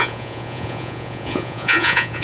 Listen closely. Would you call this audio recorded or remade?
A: remade